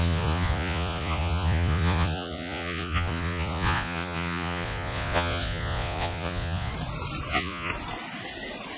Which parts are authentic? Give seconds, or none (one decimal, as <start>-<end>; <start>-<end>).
6.7-7.3; 7.7-8.8